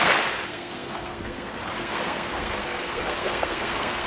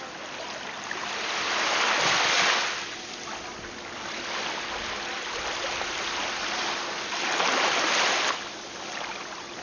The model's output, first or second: first